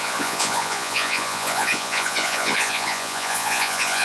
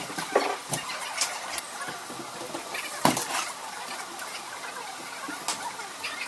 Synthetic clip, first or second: first